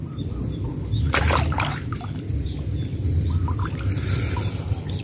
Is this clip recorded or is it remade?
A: remade